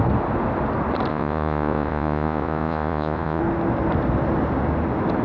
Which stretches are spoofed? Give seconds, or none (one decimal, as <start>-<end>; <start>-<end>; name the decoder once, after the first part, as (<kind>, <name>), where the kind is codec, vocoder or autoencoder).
1.1-3.4 (vocoder, Vocos)